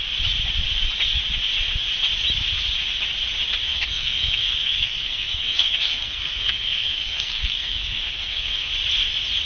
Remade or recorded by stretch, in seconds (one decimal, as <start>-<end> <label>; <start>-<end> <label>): 0.0-3.7 recorded; 3.7-8.7 remade; 8.7-9.5 recorded